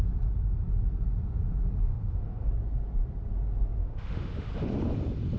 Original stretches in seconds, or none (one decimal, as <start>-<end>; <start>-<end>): 0.0-1.9; 2.5-3.8; 4.5-5.4